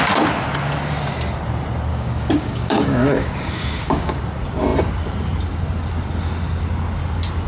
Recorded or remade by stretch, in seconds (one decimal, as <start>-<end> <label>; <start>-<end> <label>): 0.0-1.9 recorded; 1.9-4.2 remade; 4.2-7.5 recorded